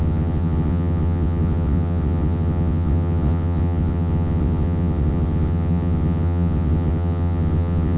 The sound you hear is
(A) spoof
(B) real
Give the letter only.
A